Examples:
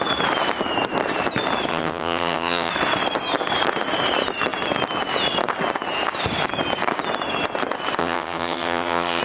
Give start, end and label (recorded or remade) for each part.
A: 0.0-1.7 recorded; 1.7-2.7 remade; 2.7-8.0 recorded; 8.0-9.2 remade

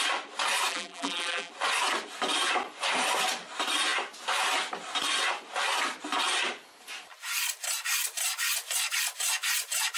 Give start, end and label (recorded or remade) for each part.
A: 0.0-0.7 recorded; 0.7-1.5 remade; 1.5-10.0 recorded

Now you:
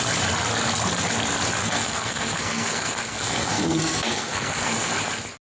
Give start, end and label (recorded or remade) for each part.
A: 0.0-1.6 recorded; 1.6-4.9 remade; 4.9-5.5 recorded